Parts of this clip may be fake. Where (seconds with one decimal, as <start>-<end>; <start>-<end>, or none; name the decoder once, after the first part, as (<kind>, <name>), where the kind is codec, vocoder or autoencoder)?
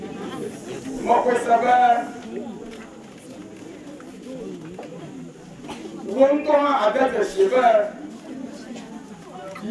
none